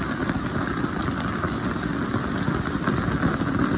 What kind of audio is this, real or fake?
real